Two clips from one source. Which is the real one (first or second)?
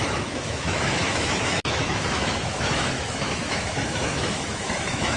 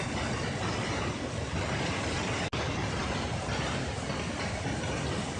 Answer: second